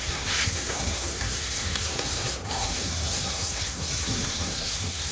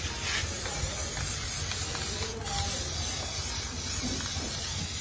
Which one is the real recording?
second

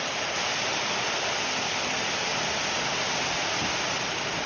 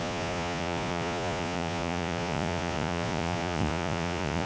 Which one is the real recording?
first